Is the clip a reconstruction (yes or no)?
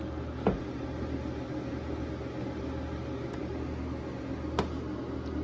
no